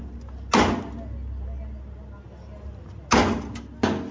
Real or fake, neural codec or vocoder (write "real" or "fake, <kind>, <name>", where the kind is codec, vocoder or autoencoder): real